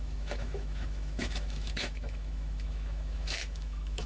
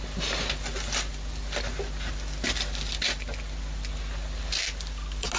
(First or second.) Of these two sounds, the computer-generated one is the first